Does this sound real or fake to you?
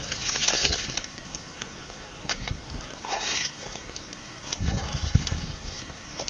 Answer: fake